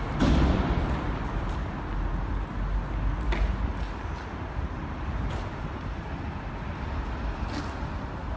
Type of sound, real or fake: real